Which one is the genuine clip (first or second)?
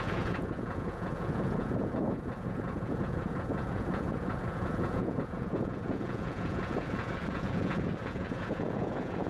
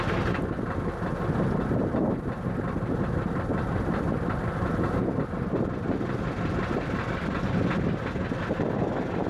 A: second